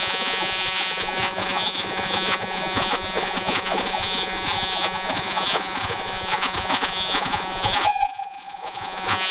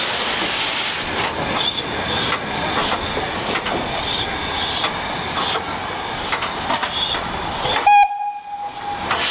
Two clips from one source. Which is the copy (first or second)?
first